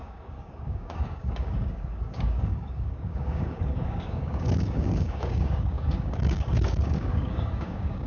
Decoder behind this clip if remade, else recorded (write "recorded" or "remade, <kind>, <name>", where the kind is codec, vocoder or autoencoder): remade, codec, DAC